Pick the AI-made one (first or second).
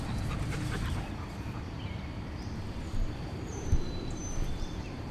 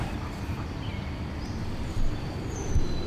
first